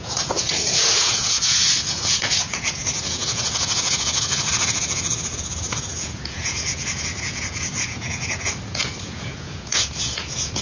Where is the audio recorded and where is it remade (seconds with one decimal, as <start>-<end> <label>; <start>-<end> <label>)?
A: 0.0-10.6 remade